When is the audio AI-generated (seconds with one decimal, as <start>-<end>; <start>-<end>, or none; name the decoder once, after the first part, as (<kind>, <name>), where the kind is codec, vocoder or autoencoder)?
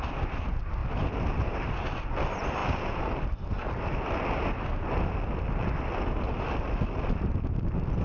none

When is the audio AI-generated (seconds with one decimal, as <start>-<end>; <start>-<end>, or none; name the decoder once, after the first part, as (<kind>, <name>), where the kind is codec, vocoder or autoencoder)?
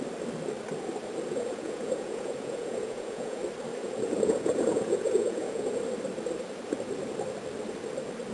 1.3-3.4 (vocoder, Vocos); 3.8-5.8